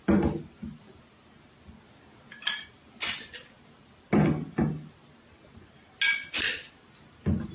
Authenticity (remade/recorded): recorded